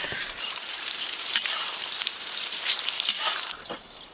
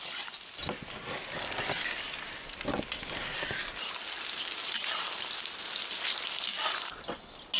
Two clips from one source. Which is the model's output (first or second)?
first